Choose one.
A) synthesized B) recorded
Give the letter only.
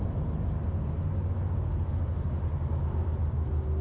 B